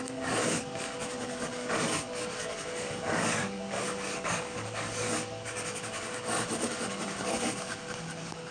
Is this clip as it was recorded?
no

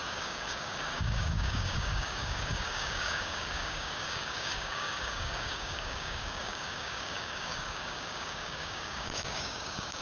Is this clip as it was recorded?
no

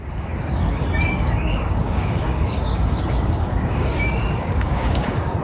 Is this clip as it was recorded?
no